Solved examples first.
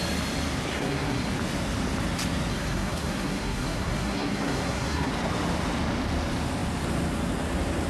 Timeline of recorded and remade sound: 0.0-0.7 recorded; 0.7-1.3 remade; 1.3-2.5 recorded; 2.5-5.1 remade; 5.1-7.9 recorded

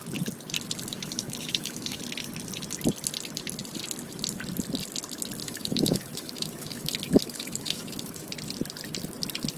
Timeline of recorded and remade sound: 0.0-0.9 recorded; 0.9-2.0 remade; 2.0-5.4 recorded; 5.4-8.3 remade; 8.3-9.6 recorded